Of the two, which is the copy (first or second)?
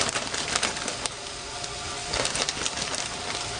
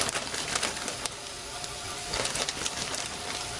second